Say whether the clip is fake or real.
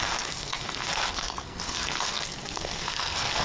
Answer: fake